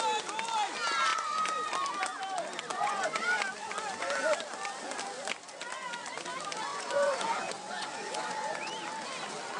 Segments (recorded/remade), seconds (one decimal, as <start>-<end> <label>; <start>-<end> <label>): 0.0-1.1 recorded; 1.1-1.7 remade; 1.7-2.7 recorded; 2.7-3.2 remade; 3.2-6.7 recorded; 6.7-8.7 remade; 8.7-9.6 recorded